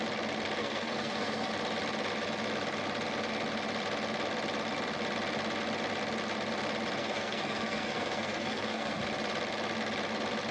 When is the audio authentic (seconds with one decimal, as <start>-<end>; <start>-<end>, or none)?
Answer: 0.0-0.6; 1.5-7.0; 9.0-10.5